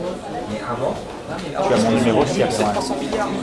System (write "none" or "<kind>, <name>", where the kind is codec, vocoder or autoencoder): none